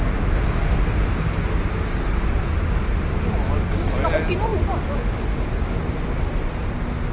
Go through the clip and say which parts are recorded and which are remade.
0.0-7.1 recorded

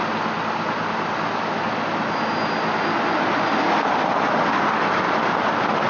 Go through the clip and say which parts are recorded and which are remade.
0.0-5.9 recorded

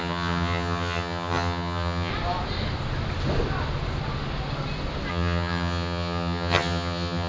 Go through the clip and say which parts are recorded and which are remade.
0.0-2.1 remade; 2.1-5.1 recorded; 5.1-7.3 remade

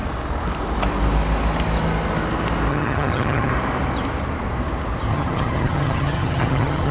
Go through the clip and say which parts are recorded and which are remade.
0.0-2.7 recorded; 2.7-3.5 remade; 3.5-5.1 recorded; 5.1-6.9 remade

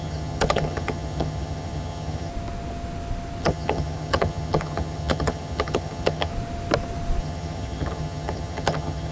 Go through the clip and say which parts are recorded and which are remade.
0.0-2.3 remade; 2.3-3.4 recorded; 3.4-6.3 remade; 6.3-7.2 recorded; 7.2-9.1 remade

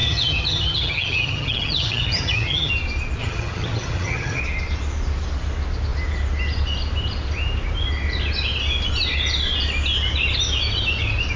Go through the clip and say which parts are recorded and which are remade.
0.0-2.7 remade; 2.7-3.2 recorded; 3.2-4.4 remade; 4.4-11.4 recorded

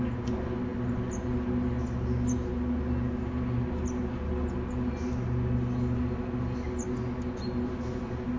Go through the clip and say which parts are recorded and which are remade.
0.0-8.4 recorded

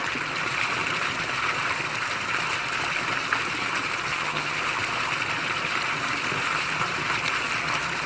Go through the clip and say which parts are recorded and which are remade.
0.0-4.1 recorded; 4.1-4.6 remade; 4.6-8.1 recorded